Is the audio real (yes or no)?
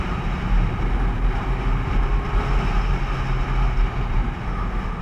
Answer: yes